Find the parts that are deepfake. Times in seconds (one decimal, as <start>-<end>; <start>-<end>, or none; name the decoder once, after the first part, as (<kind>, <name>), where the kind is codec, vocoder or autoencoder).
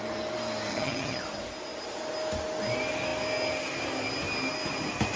0.7-1.2 (vocoder, HiFi-GAN)